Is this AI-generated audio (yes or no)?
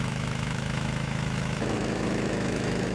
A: yes